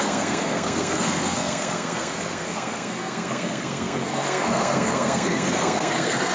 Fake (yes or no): yes